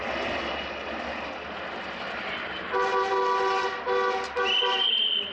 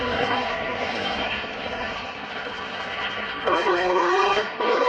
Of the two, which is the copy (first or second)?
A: second